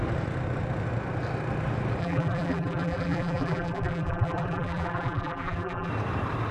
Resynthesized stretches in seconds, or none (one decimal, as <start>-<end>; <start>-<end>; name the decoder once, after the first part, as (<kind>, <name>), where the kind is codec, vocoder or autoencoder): 2.0-5.9 (vocoder, BigVGAN v2)